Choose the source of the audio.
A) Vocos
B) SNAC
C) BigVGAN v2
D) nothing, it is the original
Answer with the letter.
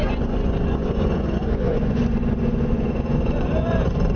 A